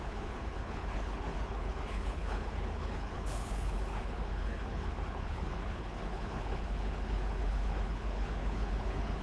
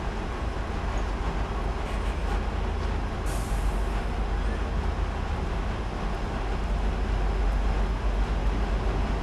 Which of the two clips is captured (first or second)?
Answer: second